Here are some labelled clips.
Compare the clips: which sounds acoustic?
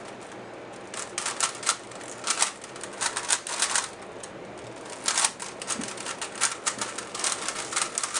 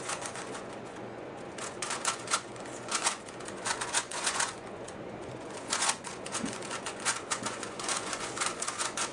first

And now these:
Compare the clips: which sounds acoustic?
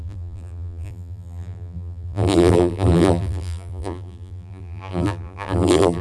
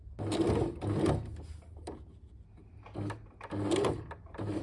second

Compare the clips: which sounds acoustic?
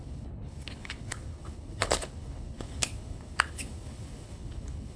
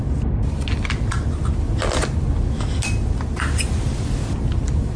second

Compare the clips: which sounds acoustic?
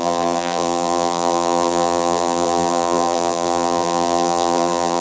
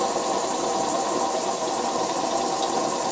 second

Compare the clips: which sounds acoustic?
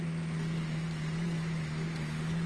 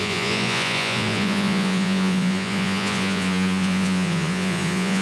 first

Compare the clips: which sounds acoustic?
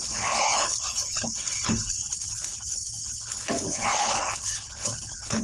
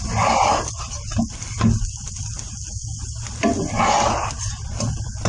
second